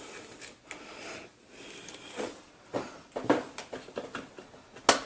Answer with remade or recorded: recorded